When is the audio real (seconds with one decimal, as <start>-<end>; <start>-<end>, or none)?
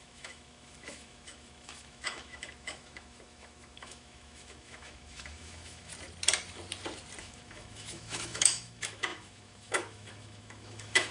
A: 5.9-7.2